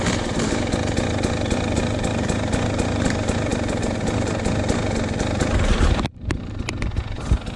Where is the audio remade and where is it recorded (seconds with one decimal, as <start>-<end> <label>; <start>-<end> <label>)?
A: 0.0-7.6 recorded